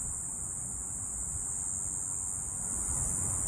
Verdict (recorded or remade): recorded